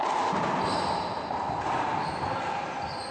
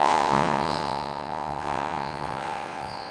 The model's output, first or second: second